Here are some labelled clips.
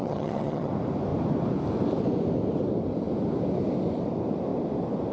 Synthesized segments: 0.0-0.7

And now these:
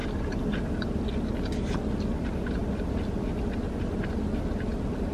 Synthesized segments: none

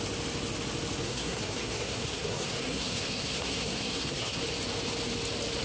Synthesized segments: 1.0-4.4

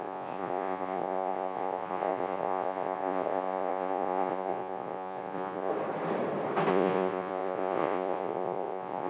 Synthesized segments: 0.0-5.7; 6.7-9.1

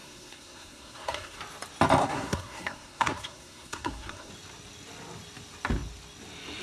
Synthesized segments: 0.0-1.4; 2.0-4.3